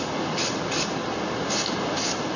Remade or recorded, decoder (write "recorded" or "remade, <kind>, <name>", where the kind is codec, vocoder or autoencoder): recorded